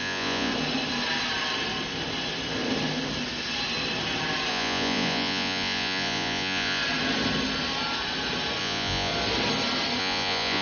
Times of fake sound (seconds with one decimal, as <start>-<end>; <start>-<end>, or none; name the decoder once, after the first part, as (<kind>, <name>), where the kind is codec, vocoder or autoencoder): 0.0-0.5 (vocoder, Vocos); 4.5-6.8; 8.6-9.1; 10.0-10.6